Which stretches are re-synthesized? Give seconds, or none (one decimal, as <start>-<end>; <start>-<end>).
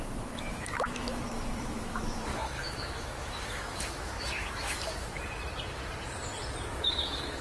0.0-5.1; 6.7-7.4